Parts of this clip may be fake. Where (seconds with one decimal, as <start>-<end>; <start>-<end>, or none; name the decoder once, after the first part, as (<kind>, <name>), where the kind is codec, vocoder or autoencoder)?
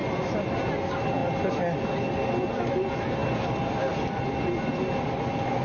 0.0-0.5 (vocoder, BigVGAN v2); 1.2-1.9